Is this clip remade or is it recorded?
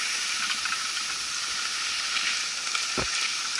recorded